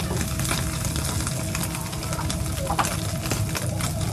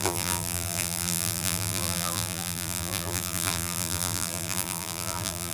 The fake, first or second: second